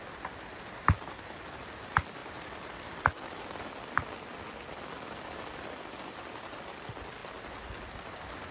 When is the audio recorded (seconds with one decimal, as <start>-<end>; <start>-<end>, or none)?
0.0-8.5